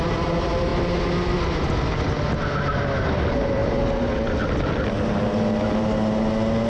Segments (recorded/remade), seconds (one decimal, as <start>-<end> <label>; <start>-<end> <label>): 0.0-6.7 recorded